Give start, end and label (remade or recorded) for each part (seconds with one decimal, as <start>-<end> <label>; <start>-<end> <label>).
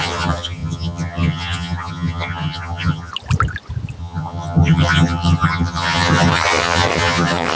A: 0.0-3.1 remade; 3.1-4.0 recorded; 4.0-7.6 remade